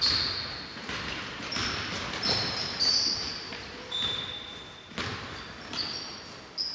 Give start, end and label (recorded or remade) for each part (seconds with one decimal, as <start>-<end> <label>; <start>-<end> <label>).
0.0-0.7 recorded; 0.7-4.2 remade; 4.2-6.7 recorded